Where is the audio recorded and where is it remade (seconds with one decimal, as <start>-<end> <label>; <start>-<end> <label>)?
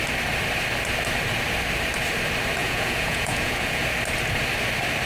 0.0-2.6 recorded; 2.6-3.8 remade; 3.8-5.1 recorded